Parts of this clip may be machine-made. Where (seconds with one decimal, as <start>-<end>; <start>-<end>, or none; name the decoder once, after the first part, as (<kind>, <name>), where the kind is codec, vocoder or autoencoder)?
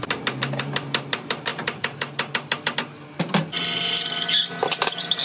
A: 0.0-1.5 (vocoder, BigVGAN v2); 4.6-5.2